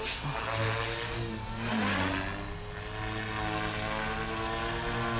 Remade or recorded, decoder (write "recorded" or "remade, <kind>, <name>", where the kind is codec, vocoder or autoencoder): recorded